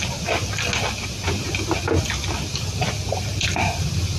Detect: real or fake real